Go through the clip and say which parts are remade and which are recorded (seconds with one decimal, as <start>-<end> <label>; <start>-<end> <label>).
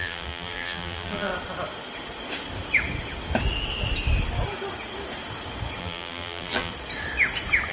0.0-1.3 remade; 1.3-5.8 recorded; 5.8-6.7 remade; 6.7-7.7 recorded